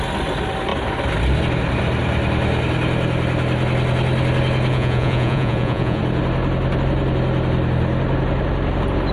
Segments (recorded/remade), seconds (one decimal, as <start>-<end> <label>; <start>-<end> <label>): 0.0-4.7 recorded; 4.7-6.0 remade; 6.0-9.1 recorded